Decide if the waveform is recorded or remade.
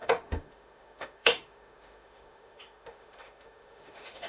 remade